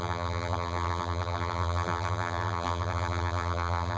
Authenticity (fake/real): fake